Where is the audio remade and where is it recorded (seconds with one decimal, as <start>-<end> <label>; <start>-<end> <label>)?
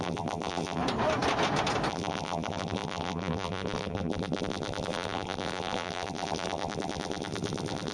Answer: 0.0-0.8 remade; 0.8-1.9 recorded; 1.9-7.9 remade